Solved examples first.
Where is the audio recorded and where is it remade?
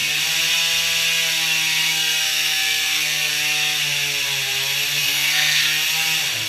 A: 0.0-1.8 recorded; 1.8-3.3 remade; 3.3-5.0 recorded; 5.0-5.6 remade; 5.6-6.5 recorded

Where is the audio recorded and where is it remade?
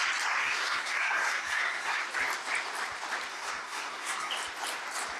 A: 0.0-0.4 recorded; 0.4-2.0 remade; 2.0-3.3 recorded; 3.3-4.3 remade; 4.3-5.2 recorded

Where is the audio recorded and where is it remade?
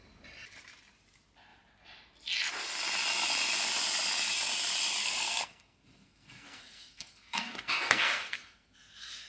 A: 0.0-5.0 recorded; 5.0-9.3 remade